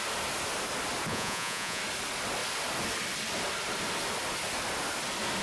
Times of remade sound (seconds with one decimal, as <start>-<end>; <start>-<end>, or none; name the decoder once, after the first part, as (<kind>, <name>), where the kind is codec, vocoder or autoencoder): 1.1-1.8 (vocoder, Vocos)